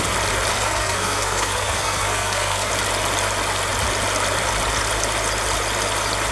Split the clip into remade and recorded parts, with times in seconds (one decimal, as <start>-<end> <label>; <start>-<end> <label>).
0.0-0.5 recorded; 0.5-2.7 remade; 2.7-6.3 recorded